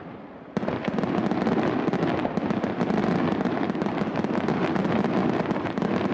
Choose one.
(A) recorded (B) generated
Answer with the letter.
A